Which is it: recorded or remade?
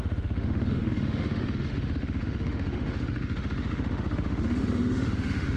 remade